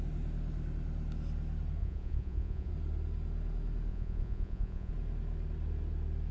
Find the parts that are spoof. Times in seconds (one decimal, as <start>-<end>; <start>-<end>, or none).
1.8-2.7; 3.9-4.9